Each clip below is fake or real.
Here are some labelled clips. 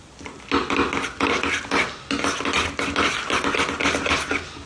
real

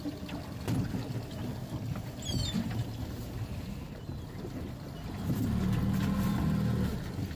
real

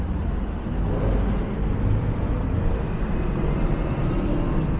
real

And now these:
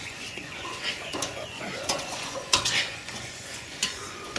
fake